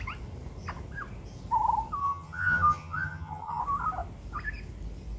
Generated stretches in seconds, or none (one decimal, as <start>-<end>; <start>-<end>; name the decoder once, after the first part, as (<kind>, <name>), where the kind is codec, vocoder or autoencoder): 2.0-3.6 (vocoder, HiFi-GAN)